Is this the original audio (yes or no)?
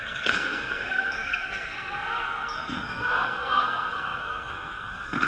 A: no